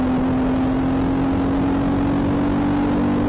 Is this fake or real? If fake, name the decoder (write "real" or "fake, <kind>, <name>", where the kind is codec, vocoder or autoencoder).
real